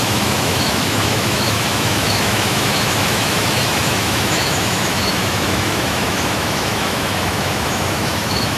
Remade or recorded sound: remade